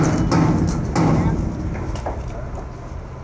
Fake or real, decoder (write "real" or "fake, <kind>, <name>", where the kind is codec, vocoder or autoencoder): real